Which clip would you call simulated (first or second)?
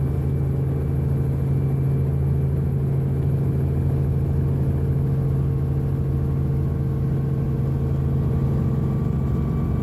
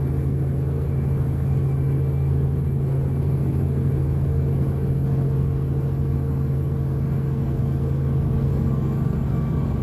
second